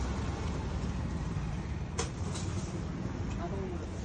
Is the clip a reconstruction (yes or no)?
no